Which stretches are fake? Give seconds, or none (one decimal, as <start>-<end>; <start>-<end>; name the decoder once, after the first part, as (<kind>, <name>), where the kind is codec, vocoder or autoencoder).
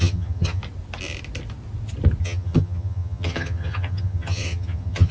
0.0-0.6 (vocoder, HiFi-GAN); 2.2-5.1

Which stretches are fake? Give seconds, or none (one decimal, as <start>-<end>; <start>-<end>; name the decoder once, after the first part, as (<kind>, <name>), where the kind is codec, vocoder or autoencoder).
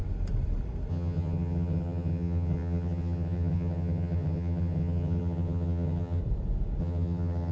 0.9-6.2 (vocoder, HiFi-GAN); 6.8-7.5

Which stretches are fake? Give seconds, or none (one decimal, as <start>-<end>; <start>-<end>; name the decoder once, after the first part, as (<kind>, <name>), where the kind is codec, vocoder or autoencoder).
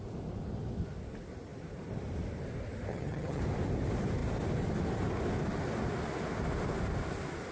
2.9-3.4 (vocoder, HiFi-GAN)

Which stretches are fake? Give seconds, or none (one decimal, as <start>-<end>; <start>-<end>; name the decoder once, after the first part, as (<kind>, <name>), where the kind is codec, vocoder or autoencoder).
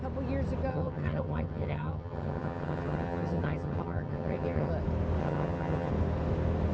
0.7-4.7 (vocoder, HiFi-GAN); 5.2-5.9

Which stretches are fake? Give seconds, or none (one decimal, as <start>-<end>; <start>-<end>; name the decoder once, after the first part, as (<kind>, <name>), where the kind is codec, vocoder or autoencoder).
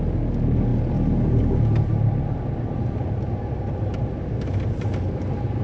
none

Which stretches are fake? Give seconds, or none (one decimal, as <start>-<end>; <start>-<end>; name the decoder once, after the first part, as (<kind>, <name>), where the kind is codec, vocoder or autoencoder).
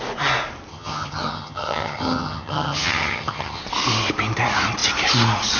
0.7-3.6 (vocoder, HiFi-GAN)